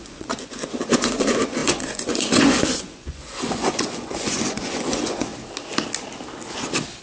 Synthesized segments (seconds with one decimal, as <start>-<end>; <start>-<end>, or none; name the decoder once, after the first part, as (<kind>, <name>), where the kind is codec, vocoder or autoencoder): 0.0-5.3 (vocoder, Vocos)